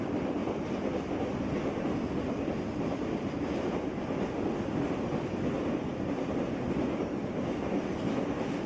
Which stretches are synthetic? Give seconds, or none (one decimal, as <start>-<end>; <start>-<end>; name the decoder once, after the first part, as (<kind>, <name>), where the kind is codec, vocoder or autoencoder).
none